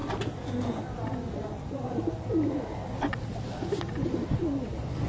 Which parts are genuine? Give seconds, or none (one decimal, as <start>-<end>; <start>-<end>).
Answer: 0.0-5.1

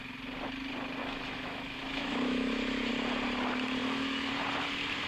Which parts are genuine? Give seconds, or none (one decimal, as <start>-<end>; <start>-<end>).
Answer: 0.0-1.0; 2.9-3.8; 4.3-5.1

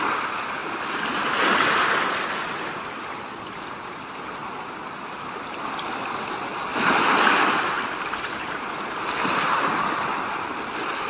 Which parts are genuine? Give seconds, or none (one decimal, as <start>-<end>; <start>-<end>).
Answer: 0.0-11.1

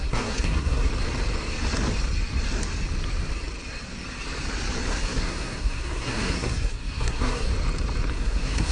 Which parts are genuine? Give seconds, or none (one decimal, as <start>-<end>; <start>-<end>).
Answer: 0.9-4.9; 7.5-8.1

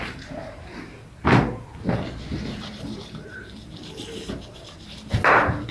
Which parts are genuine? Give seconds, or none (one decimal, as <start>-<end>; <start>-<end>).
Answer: 0.0-2.3; 4.2-5.7

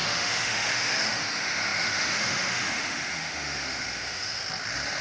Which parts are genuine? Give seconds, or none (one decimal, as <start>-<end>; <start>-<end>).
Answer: 4.4-5.0

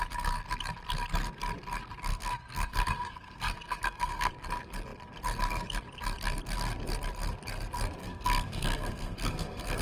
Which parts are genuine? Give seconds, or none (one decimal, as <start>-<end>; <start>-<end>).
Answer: 0.0-2.1; 4.3-8.0

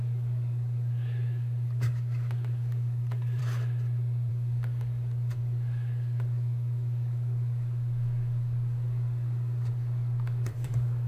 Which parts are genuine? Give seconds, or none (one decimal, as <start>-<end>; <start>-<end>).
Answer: 3.4-4.3